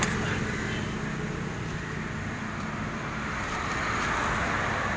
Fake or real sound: real